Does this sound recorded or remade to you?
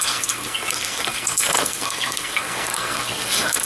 remade